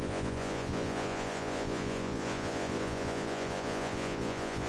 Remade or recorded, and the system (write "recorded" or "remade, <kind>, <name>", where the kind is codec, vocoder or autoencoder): remade, vocoder, Vocos